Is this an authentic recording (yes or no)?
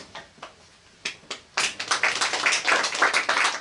yes